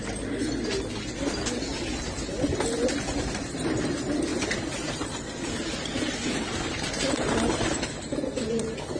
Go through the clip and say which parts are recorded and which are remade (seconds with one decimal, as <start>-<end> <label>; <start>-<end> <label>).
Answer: 0.0-9.0 recorded